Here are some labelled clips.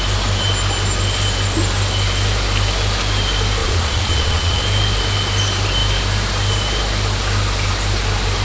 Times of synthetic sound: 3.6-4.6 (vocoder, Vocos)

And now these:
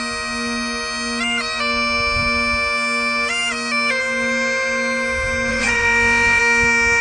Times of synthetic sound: 5.5-6.4 (vocoder, Vocos)

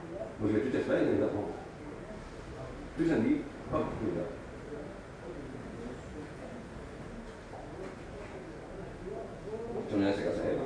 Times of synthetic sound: 1.1-1.8 (vocoder, Vocos); 6.1-6.7; 9.3-9.9

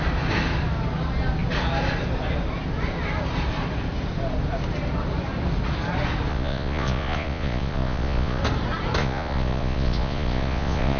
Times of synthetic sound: 6.3-8.4 (vocoder, Vocos); 9.0-11.0

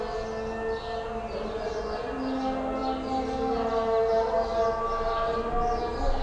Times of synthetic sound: none

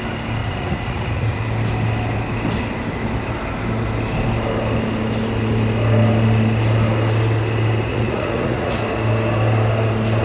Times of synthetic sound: 0.4-1.4 (vocoder, Vocos); 7.9-8.8

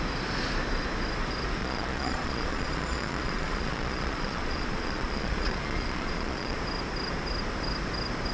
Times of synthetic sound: 1.6-6.6 (vocoder, Vocos)

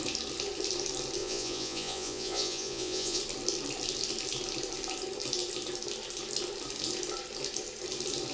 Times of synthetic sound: 1.2-3.2 (vocoder, Vocos)